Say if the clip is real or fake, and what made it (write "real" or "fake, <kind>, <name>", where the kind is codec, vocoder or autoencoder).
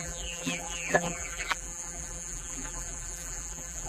fake, vocoder, BigVGAN v2